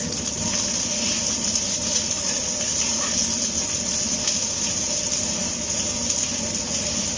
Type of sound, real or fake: real